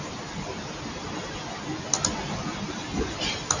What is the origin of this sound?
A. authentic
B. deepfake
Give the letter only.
A